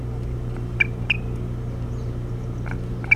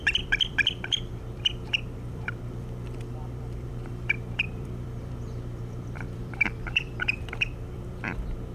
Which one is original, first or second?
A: first